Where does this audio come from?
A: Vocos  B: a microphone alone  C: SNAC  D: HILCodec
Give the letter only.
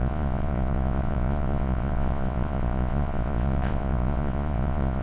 A